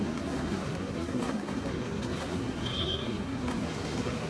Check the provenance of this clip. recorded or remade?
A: remade